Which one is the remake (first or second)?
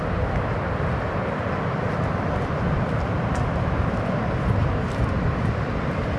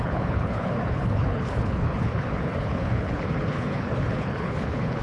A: second